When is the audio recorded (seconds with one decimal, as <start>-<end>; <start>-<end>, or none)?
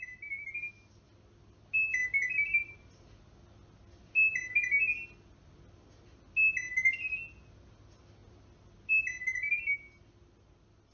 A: 0.0-10.9